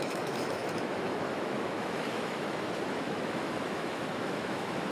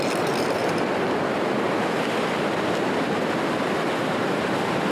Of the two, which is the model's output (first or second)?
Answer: first